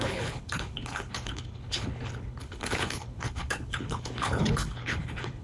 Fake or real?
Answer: fake